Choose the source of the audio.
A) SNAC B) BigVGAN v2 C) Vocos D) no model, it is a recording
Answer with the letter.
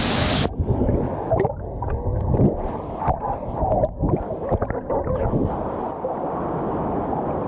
D